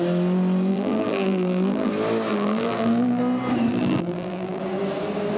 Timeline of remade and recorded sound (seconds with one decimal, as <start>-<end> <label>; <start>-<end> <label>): 0.0-0.7 recorded; 0.7-1.9 remade; 1.9-2.3 recorded; 2.3-3.2 remade; 3.2-3.7 recorded; 3.7-4.6 remade; 4.6-5.4 recorded